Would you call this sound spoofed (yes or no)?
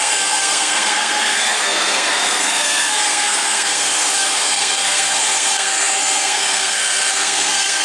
yes